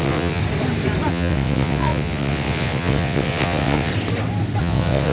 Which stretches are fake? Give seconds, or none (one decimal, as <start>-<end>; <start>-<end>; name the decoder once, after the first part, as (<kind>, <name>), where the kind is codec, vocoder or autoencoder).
0.0-0.4 (vocoder, WaveNeXt); 1.1-3.9; 4.6-5.1